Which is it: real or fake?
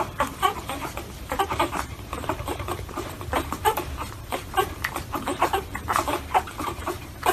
fake